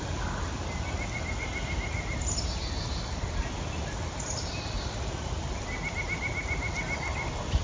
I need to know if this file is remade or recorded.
recorded